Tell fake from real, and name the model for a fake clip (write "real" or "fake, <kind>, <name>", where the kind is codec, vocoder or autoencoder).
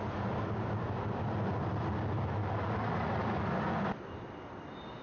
real